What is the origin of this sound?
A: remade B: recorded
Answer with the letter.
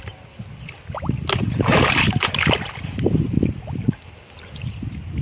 B